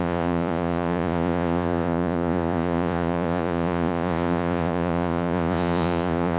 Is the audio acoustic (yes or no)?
no